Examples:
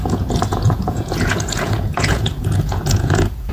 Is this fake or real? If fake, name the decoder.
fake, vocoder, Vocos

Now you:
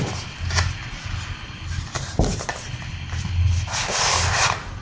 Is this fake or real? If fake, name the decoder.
real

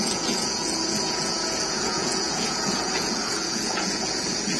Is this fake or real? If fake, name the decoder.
fake, vocoder, Vocos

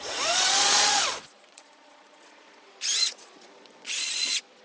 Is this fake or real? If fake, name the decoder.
fake, vocoder, Vocos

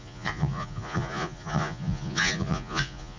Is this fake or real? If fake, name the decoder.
fake, vocoder, Vocos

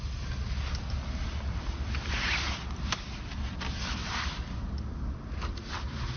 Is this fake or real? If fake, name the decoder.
real